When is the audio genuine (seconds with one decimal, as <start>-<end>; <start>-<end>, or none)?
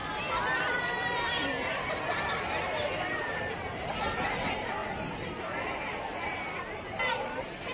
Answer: 0.0-7.7